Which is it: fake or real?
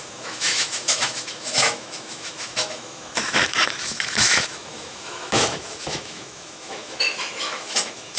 fake